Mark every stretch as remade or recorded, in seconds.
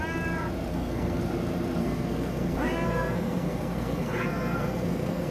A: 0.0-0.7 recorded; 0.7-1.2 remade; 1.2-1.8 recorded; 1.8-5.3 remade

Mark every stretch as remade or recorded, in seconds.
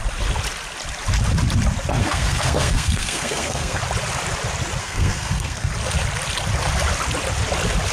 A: 0.0-2.0 recorded; 2.0-3.8 remade; 3.8-4.8 recorded; 4.8-5.7 remade; 5.7-7.9 recorded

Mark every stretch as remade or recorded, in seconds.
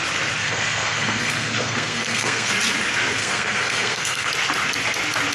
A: 0.0-0.4 recorded; 0.4-2.5 remade; 2.5-3.2 recorded; 3.2-4.3 remade; 4.3-5.3 recorded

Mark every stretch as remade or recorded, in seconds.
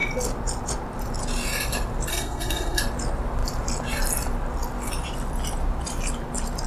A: 0.0-2.1 recorded; 2.1-2.8 remade; 2.8-6.7 recorded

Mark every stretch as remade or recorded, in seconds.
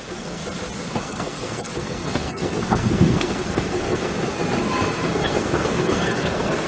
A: 0.0-0.4 remade; 0.4-1.0 recorded; 1.0-4.1 remade; 4.1-4.9 recorded; 4.9-6.7 remade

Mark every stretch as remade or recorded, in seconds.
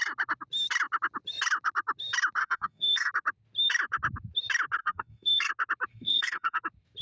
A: 0.0-2.4 recorded; 2.4-3.1 remade; 3.1-4.8 recorded; 4.8-5.5 remade; 5.5-5.9 recorded; 5.9-6.6 remade; 6.6-7.0 recorded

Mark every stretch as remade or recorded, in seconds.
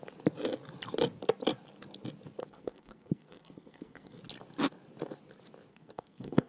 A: 0.0-2.4 recorded; 2.4-4.2 remade; 4.2-5.7 recorded; 5.7-6.5 remade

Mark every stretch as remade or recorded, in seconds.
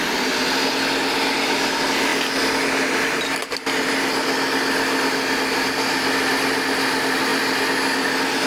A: 0.0-8.5 recorded